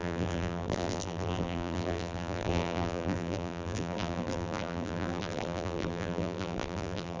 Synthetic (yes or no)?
yes